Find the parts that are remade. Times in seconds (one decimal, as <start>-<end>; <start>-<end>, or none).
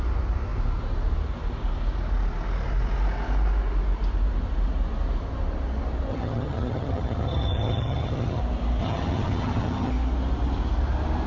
6.1-8.4; 8.8-9.9